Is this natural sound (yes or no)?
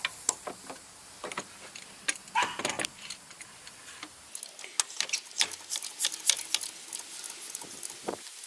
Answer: yes